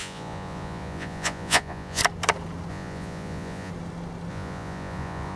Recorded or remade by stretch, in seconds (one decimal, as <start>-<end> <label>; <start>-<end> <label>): 0.0-2.0 remade; 2.0-2.7 recorded; 2.7-3.7 remade; 3.7-4.3 recorded; 4.3-5.4 remade